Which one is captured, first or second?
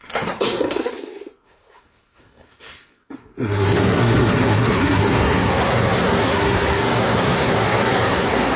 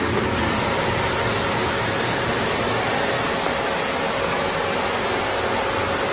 second